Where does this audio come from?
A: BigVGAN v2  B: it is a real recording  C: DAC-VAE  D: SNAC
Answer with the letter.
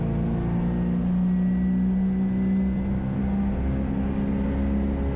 B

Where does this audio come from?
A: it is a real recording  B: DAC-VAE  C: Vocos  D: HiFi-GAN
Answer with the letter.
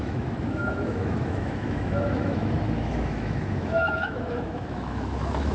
B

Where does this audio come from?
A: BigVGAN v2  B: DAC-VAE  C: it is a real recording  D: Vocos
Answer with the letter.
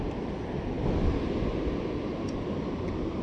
C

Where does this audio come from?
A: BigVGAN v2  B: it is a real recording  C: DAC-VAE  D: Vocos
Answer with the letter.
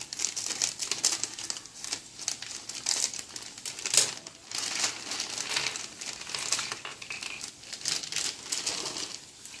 B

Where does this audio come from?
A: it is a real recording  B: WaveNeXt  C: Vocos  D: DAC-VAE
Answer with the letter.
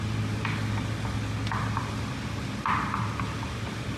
A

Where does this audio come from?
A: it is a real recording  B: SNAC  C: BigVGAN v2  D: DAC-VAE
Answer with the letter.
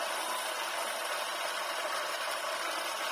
A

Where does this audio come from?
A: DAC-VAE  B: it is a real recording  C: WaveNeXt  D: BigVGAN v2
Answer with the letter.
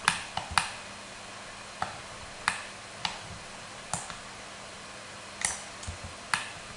B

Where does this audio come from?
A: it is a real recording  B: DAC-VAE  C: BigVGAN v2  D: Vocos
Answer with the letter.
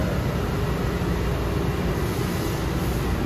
A